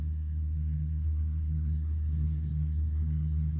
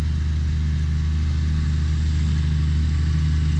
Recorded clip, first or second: second